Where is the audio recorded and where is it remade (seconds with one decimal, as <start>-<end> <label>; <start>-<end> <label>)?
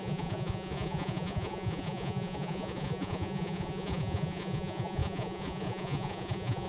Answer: 0.0-6.7 remade